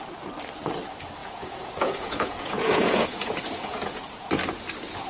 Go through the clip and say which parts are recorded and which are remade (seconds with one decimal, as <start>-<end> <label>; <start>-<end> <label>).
0.0-1.2 recorded; 1.2-4.3 remade; 4.3-5.1 recorded